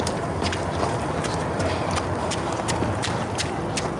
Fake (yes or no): no